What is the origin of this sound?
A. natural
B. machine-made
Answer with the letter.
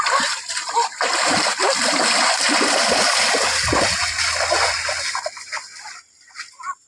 A